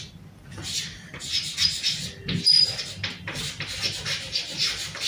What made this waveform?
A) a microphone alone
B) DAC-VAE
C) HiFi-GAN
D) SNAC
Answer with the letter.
A